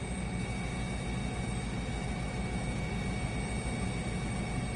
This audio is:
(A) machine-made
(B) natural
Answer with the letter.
B